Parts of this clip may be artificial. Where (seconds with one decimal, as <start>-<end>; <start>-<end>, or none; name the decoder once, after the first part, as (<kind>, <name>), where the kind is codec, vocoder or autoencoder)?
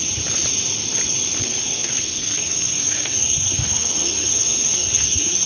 1.4-5.5 (codec, SNAC)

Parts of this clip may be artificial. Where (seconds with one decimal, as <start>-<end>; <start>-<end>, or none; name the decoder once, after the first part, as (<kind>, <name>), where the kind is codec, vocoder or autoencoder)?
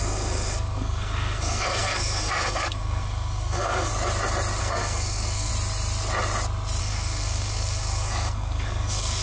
0.0-3.9 (codec, SNAC); 4.6-5.5; 6.8-9.2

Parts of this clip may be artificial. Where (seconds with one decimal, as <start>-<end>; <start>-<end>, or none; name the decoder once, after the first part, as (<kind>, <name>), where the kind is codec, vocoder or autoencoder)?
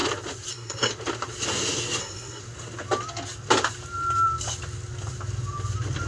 0.5-0.9 (codec, SNAC); 2.0-2.4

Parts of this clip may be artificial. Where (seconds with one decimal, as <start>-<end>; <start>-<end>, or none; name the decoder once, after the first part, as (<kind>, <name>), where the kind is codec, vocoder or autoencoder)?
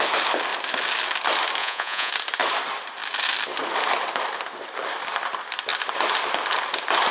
1.6-2.1 (vocoder, Vocos)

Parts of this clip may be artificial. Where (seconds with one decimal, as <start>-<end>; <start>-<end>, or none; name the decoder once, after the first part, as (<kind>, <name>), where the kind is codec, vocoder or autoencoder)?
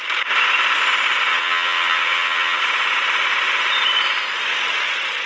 1.3-2.6 (vocoder, HiFi-GAN)